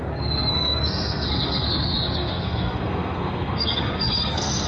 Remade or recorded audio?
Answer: remade